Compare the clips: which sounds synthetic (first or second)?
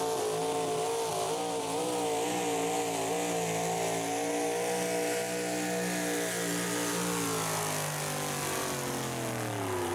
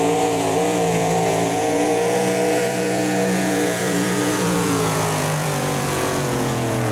second